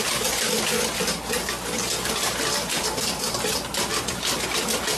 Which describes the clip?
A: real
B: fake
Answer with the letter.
A